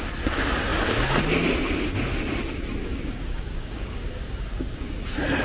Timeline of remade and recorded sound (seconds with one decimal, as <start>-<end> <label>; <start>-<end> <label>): 0.0-2.8 recorded; 2.8-4.9 remade; 4.9-5.4 recorded